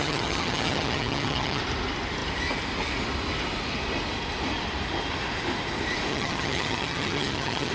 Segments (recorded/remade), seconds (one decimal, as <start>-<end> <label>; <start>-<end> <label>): 0.0-1.6 remade; 1.6-6.1 recorded; 6.1-7.7 remade